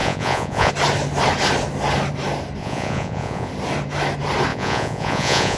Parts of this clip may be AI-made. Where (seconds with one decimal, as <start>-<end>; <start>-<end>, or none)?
0.0-0.7; 2.6-3.5; 4.5-5.6